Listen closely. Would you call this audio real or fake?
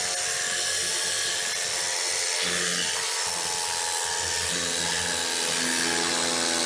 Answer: real